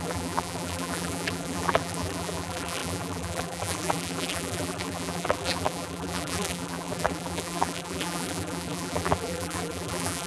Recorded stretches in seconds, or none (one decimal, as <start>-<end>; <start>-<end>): none